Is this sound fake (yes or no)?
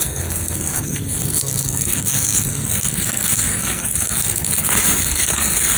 yes